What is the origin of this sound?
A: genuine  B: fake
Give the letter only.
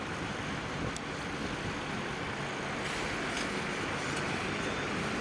A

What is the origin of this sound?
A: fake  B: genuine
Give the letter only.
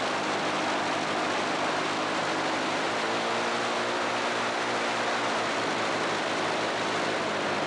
B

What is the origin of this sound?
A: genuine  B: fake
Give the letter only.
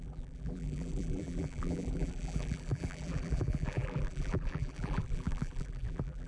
B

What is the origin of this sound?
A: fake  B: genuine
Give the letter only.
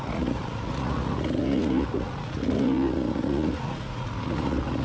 A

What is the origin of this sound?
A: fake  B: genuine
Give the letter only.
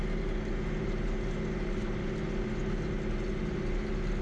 B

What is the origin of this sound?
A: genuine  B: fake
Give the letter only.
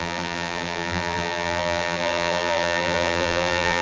B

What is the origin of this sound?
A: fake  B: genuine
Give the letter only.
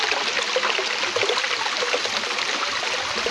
B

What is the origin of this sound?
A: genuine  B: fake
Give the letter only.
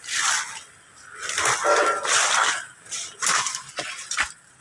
A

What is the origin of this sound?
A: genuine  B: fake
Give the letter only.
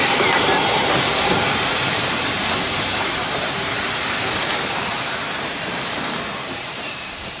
B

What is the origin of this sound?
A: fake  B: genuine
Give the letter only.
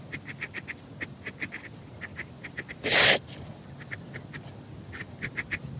B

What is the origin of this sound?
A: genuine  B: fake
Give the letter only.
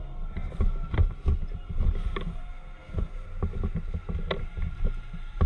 A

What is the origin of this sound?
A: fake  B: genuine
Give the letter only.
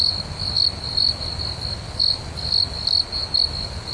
B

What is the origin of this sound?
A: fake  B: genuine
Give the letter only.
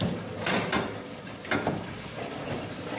A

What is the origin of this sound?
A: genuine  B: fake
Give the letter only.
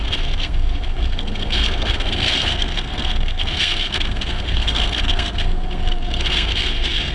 B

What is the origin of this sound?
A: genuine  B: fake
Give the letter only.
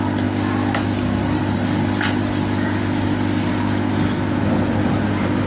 A